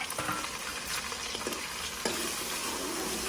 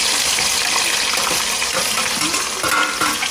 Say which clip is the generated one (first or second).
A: second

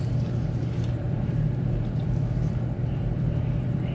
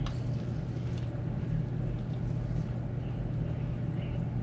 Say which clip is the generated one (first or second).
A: first